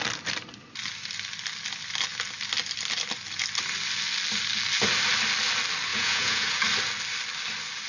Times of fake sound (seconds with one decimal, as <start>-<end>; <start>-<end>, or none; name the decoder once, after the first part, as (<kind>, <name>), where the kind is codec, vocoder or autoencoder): 5.9-6.6 (vocoder, Vocos)